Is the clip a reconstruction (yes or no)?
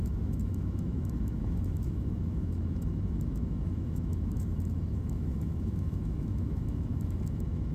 yes